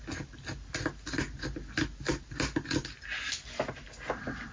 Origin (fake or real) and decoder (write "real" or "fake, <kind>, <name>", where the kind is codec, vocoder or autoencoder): real